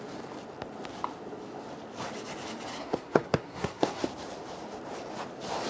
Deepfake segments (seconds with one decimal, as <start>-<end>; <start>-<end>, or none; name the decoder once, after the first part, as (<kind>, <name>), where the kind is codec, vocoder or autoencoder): 2.7-4.0 (codec, SNAC)

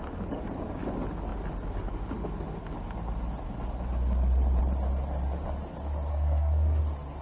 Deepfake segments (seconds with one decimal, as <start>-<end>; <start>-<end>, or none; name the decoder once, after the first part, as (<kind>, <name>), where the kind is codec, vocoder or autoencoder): 6.1-6.8 (codec, SNAC)